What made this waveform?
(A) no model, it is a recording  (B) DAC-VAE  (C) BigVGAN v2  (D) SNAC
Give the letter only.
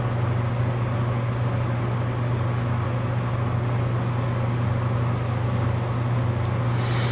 A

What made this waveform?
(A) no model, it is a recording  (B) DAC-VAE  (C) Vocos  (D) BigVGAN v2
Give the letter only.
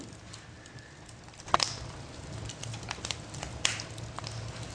A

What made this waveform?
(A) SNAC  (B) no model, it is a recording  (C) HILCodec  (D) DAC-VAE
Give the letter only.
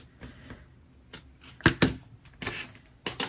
B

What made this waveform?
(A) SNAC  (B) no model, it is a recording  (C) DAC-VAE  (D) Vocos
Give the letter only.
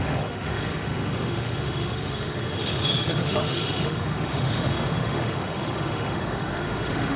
C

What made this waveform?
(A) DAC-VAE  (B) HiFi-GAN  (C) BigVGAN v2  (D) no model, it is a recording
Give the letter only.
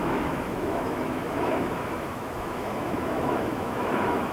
A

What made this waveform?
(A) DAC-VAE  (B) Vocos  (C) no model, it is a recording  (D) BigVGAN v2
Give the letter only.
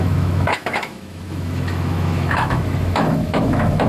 A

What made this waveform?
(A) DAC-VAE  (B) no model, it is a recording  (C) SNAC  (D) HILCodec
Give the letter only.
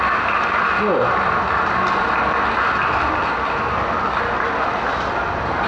B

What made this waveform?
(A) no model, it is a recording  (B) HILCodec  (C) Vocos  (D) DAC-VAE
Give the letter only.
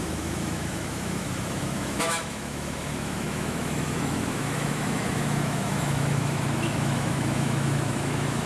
D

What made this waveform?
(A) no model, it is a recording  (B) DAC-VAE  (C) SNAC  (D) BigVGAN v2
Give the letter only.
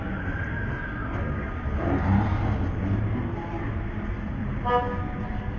A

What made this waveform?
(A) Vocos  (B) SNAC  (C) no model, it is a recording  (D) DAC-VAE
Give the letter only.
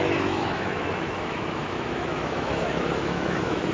D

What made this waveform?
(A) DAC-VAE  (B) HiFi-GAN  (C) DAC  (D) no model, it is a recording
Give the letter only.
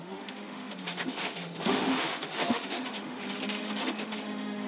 A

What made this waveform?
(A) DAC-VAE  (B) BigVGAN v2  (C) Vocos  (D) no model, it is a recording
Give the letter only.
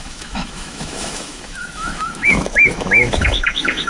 A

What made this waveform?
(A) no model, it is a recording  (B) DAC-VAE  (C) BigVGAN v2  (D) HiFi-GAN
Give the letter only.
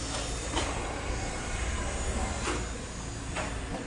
A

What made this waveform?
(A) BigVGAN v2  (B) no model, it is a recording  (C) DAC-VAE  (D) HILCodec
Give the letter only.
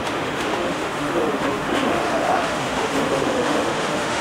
C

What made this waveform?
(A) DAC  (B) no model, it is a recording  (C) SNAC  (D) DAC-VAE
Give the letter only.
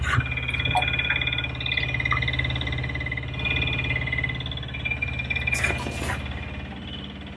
B